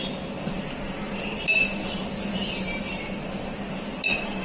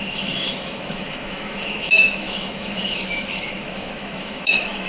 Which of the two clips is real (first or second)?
first